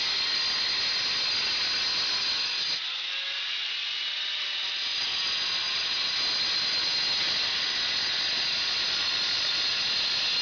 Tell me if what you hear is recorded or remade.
recorded